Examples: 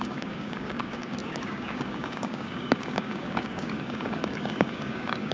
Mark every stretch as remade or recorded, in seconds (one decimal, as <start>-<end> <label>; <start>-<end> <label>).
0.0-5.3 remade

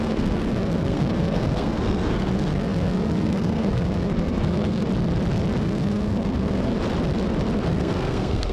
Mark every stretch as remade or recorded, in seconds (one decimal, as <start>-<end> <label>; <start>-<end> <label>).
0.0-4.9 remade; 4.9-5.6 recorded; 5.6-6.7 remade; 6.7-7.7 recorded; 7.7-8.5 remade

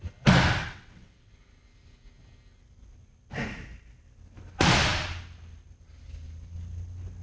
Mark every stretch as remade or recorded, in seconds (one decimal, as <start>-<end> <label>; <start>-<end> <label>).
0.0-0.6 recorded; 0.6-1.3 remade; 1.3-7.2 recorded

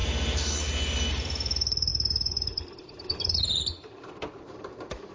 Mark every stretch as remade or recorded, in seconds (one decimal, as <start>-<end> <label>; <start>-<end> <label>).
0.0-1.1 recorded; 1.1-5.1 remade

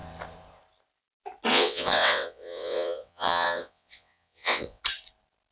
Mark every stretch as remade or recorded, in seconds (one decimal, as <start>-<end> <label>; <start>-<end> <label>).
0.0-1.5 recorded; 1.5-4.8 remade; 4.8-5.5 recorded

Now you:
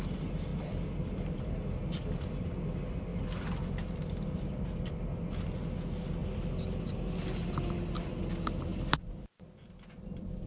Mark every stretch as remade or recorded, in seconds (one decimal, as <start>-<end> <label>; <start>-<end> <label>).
0.0-0.5 recorded; 0.5-2.4 remade; 2.4-3.1 recorded; 3.1-5.0 remade; 5.0-8.7 recorded; 8.7-10.5 remade

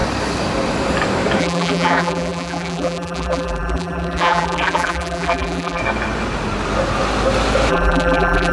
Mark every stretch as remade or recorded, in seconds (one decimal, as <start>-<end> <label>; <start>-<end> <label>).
0.0-1.4 recorded; 1.4-5.8 remade; 5.8-7.7 recorded; 7.7-8.5 remade

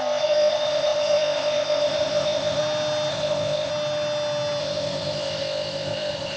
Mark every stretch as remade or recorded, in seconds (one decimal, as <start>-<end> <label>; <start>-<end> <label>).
0.0-2.6 remade; 2.6-3.1 recorded; 3.1-3.7 remade; 3.7-4.6 recorded; 4.6-6.4 remade